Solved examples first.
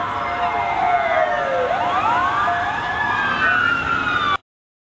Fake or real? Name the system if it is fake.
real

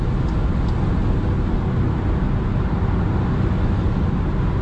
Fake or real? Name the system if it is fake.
real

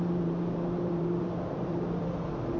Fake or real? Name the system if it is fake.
fake, vocoder, BigVGAN v2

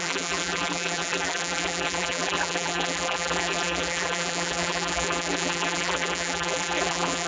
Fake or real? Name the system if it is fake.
fake, vocoder, BigVGAN v2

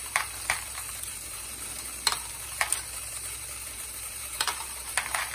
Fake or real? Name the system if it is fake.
fake, vocoder, BigVGAN v2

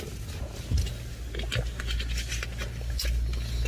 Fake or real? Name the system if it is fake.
real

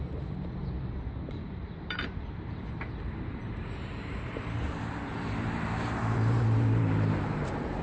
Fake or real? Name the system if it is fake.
fake, vocoder, BigVGAN v2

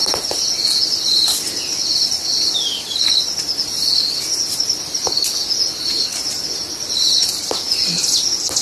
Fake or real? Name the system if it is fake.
real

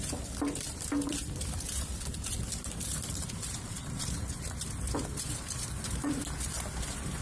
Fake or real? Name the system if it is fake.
fake, vocoder, BigVGAN v2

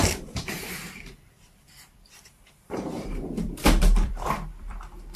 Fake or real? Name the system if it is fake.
fake, vocoder, BigVGAN v2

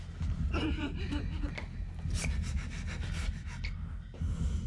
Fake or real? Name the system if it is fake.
real